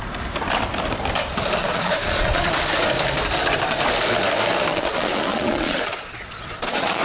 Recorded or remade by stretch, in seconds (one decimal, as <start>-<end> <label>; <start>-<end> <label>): 0.0-1.6 recorded; 1.6-2.5 remade; 2.5-4.7 recorded; 4.7-7.0 remade

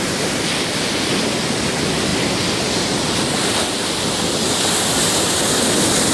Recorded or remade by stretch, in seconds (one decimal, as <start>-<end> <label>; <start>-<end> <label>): 0.0-6.1 recorded

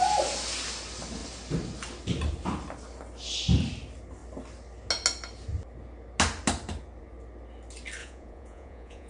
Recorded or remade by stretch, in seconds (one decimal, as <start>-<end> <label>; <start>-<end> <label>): 0.0-8.0 recorded; 8.0-9.1 remade